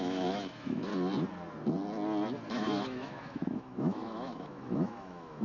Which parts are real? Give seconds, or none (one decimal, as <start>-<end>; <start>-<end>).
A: 0.9-2.5